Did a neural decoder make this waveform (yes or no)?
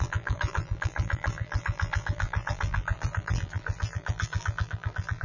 yes